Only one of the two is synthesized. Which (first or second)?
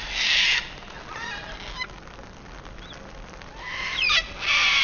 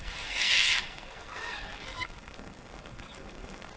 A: second